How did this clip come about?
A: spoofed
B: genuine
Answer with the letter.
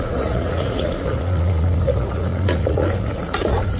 A